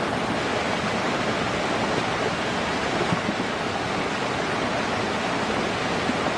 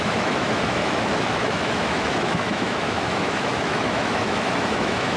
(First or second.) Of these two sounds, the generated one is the second